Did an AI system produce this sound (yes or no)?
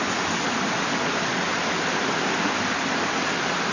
no